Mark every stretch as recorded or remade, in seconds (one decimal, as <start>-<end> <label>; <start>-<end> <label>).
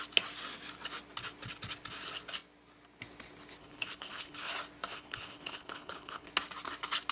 0.0-3.6 recorded; 3.6-4.5 remade; 4.5-4.9 recorded; 4.9-6.3 remade; 6.3-7.1 recorded